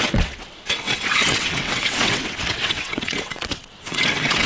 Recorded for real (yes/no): no